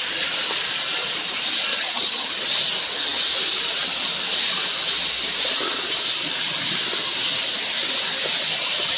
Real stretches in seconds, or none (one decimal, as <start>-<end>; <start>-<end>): 0.0-1.7; 2.4-9.0